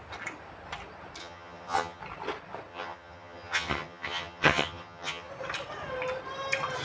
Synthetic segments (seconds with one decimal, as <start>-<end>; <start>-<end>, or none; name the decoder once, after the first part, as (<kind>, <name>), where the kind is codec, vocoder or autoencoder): 1.2-2.0 (vocoder, HiFi-GAN); 2.7-5.3